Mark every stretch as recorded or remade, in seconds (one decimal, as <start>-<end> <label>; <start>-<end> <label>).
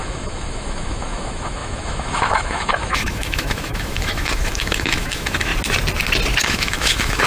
0.0-5.5 remade; 5.5-6.4 recorded; 6.4-7.3 remade